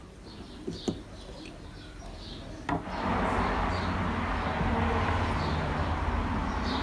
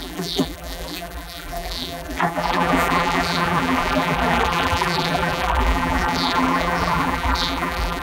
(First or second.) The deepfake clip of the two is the second